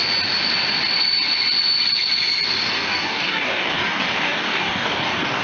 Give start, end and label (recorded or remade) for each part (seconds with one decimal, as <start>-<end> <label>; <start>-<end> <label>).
0.0-2.7 recorded; 2.7-5.4 remade